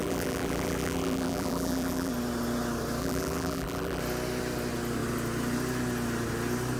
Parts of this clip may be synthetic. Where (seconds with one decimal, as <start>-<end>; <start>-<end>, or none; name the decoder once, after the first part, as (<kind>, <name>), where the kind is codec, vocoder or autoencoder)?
0.0-2.1 (vocoder, BigVGAN v2); 3.0-4.0